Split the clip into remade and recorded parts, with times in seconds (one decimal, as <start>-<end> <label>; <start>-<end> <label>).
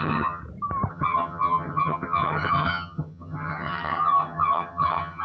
0.0-0.4 remade; 0.4-0.9 recorded; 0.9-5.2 remade